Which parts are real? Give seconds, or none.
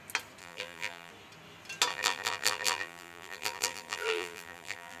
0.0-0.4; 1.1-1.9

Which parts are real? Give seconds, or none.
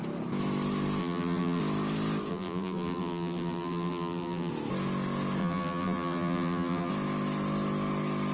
0.0-1.0; 1.6-2.3; 4.5-5.4; 6.9-8.3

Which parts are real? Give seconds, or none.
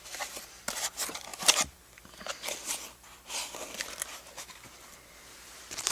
0.0-5.9